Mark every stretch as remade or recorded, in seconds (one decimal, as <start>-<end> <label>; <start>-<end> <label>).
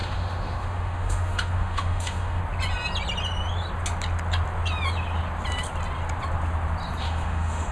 0.0-2.4 remade; 2.4-7.0 recorded; 7.0-7.7 remade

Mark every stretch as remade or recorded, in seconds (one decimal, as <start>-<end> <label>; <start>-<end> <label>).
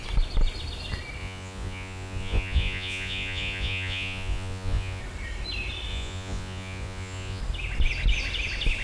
0.0-1.2 recorded; 1.2-5.0 remade; 5.0-5.9 recorded; 5.9-7.4 remade; 7.4-8.8 recorded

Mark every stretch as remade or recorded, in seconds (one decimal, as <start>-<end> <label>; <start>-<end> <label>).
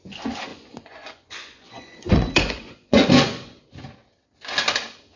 0.0-0.5 recorded; 0.5-3.6 remade; 3.6-5.2 recorded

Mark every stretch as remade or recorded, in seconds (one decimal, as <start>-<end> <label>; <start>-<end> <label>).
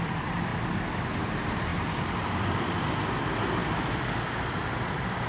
0.0-0.5 remade; 0.5-1.1 recorded; 1.1-5.3 remade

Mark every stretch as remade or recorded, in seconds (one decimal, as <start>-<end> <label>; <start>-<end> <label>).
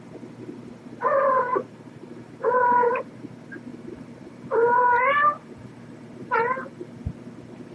0.0-1.5 recorded; 1.5-3.3 remade; 3.3-3.7 recorded; 3.7-6.4 remade; 6.4-7.7 recorded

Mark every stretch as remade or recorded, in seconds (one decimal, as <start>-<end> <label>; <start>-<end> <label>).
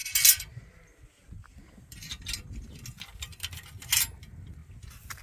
0.0-5.2 recorded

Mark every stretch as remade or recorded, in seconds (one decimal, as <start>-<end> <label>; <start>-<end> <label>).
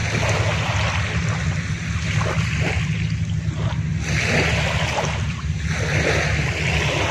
0.0-7.1 recorded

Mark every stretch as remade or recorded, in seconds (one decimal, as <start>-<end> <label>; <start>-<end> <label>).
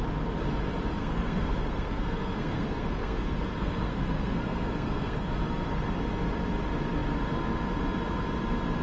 0.0-1.0 recorded; 1.0-5.3 remade; 5.3-8.8 recorded